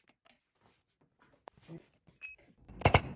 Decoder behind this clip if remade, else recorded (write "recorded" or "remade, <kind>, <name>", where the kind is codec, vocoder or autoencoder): recorded